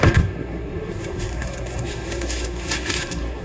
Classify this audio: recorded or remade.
remade